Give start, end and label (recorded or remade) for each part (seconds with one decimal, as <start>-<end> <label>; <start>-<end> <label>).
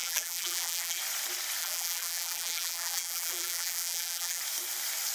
0.0-1.0 remade; 1.0-1.6 recorded; 1.6-4.4 remade; 4.4-5.1 recorded